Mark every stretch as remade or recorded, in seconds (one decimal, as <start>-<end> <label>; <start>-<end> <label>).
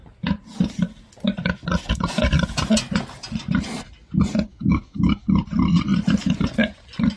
0.0-4.5 recorded; 4.5-5.2 remade; 5.2-7.2 recorded